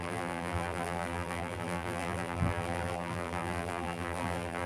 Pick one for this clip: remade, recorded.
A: remade